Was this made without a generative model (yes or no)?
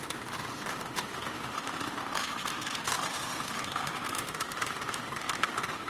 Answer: no